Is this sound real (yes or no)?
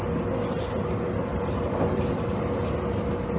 yes